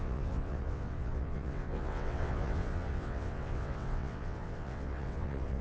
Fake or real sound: fake